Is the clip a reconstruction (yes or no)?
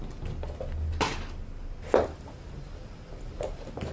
no